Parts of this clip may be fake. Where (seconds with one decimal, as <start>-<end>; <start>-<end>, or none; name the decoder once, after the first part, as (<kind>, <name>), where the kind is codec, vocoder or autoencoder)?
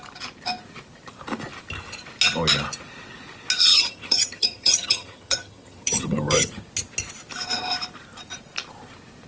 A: 3.7-6.7 (vocoder, HiFi-GAN)